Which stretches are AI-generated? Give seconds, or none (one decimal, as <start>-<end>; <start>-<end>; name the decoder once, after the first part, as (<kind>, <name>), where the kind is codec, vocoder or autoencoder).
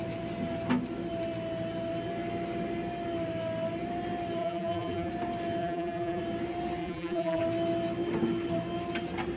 4.4-5.1 (vocoder, BigVGAN v2); 5.6-6.2; 6.8-7.4